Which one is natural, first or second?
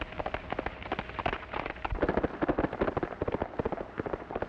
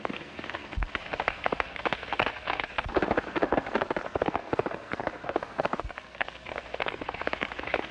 first